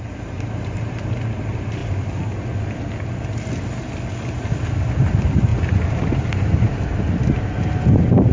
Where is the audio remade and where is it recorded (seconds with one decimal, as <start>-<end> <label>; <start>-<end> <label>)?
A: 0.0-8.3 recorded